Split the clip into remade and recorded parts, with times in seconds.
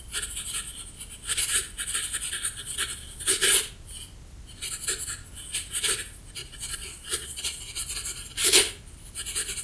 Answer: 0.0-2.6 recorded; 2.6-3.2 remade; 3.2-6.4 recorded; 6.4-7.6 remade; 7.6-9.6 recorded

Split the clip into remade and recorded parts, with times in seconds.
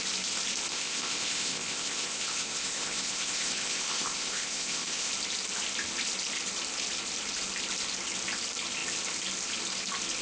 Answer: 0.0-0.7 recorded; 0.7-5.1 remade; 5.1-10.2 recorded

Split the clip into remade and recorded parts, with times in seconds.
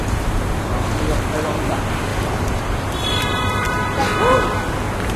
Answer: 0.0-2.1 recorded; 2.1-3.7 remade; 3.7-5.2 recorded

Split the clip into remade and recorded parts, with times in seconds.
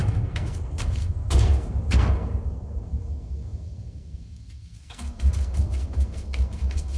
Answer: 0.0-7.0 remade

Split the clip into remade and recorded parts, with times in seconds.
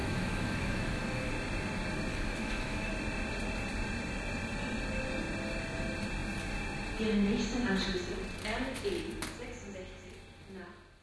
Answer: 0.0-1.3 remade; 1.3-2.1 recorded; 2.1-2.9 remade; 2.9-11.0 recorded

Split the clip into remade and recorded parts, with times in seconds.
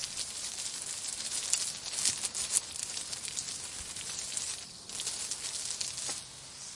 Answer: 0.0-6.7 recorded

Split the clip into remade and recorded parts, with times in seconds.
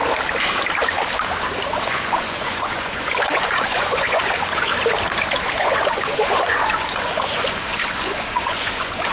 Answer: 0.0-1.8 recorded; 1.8-4.7 remade; 4.7-5.6 recorded; 5.6-9.1 remade